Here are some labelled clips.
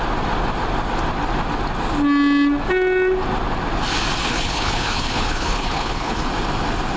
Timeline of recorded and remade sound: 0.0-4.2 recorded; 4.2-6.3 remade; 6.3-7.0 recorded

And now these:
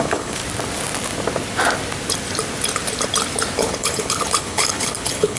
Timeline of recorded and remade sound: 0.0-0.4 remade; 0.4-3.6 recorded; 3.6-5.4 remade